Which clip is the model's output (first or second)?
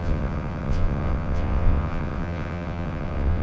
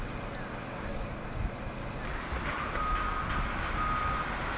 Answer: first